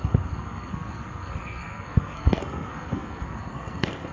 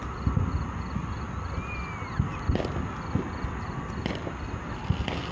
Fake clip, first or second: first